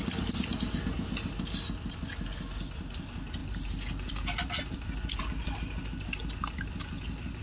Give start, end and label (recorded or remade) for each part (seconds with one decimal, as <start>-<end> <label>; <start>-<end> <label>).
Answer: 0.0-7.4 recorded